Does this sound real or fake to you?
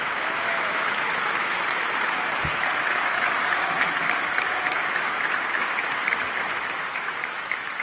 fake